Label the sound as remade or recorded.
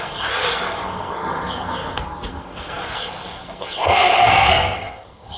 remade